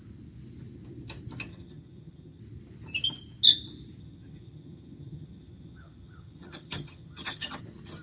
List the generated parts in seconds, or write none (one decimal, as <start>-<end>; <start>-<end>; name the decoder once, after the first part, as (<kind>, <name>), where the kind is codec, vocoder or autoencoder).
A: 1.5-2.4 (vocoder, HiFi-GAN); 4.0-7.6